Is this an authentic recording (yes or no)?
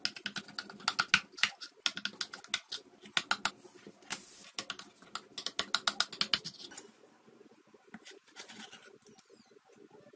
yes